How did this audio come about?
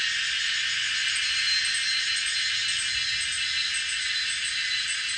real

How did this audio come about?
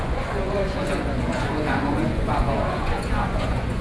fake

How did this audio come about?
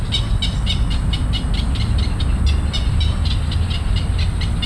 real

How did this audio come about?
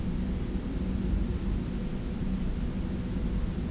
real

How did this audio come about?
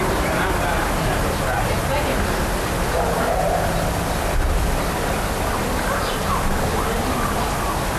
real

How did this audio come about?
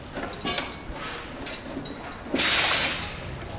real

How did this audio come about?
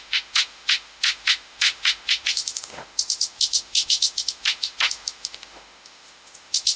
fake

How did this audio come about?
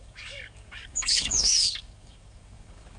fake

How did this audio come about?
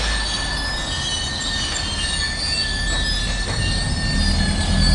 real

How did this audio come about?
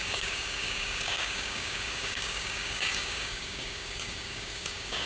fake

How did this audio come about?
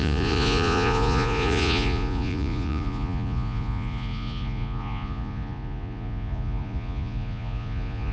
fake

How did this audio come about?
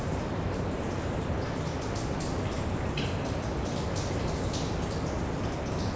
real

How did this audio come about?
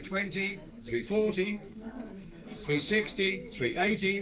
fake